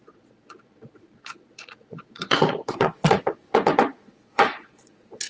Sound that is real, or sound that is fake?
fake